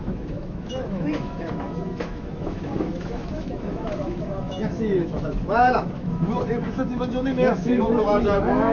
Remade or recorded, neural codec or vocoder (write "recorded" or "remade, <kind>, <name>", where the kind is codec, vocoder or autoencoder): remade, autoencoder, DAC-VAE